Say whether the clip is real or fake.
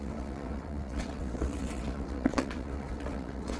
fake